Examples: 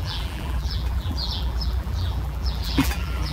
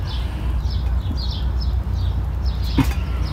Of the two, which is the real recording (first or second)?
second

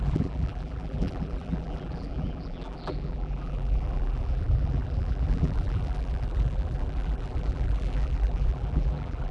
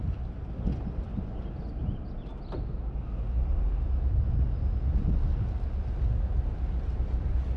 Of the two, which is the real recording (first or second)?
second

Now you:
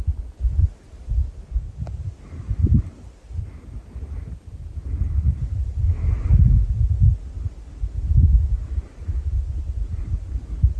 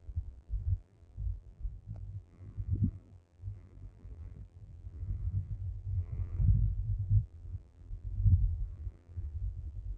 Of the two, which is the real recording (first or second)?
first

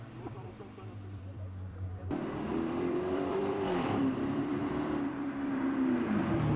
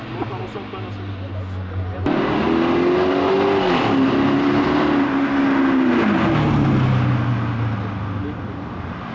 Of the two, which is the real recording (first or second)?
second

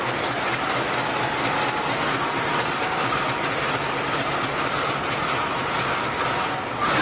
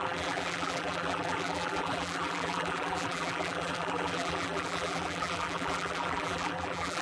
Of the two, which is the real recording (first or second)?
first